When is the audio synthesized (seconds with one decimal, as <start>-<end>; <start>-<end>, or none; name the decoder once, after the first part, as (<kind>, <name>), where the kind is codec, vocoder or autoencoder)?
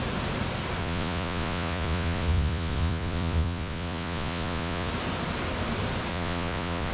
0.8-4.9 (vocoder, Vocos); 6.1-6.9